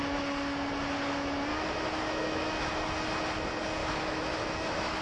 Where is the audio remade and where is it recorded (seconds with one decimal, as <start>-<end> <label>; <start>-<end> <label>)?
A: 0.0-1.5 recorded; 1.5-2.7 remade; 2.7-3.8 recorded; 3.8-5.0 remade